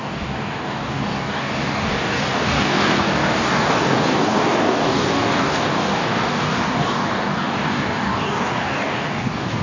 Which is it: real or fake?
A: fake